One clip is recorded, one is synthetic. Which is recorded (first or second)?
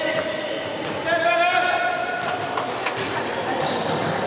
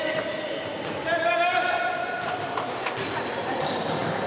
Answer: first